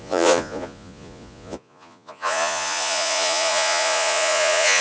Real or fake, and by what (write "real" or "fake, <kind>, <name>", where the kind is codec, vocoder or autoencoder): fake, vocoder, Vocos